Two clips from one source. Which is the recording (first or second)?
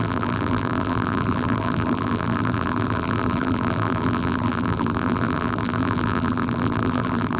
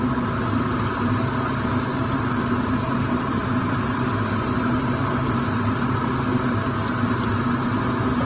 second